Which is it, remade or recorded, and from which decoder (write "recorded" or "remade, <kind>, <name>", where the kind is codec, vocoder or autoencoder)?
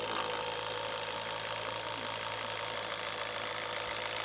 recorded